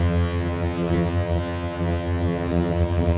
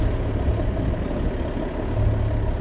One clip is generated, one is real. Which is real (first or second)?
second